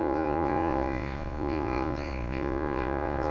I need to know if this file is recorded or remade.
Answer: remade